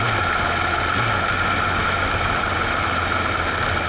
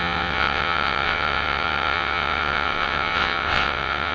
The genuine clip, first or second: first